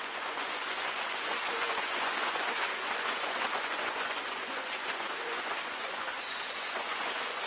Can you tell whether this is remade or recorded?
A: remade